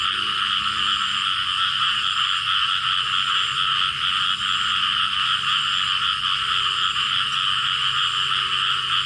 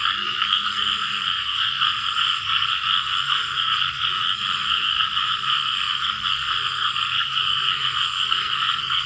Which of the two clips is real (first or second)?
first